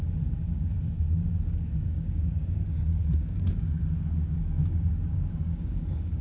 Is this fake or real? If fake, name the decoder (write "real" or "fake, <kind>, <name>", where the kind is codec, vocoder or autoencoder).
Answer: fake, codec, DAC